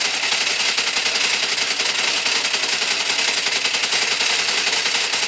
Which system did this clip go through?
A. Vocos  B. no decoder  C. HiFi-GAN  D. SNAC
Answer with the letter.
B